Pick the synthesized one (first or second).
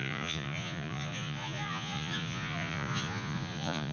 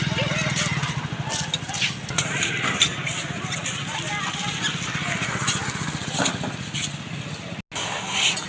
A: first